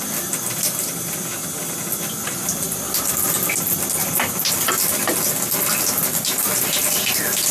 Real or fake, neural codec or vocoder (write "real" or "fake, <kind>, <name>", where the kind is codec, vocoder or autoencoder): real